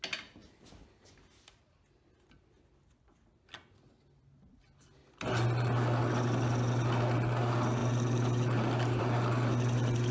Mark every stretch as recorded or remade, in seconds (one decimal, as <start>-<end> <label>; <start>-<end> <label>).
0.0-10.1 recorded